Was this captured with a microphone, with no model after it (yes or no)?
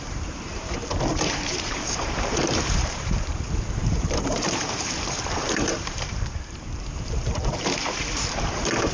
no